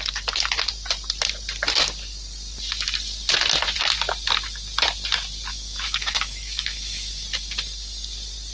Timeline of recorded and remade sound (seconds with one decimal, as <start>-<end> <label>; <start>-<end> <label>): 0.0-5.5 recorded; 5.5-7.1 remade; 7.1-8.5 recorded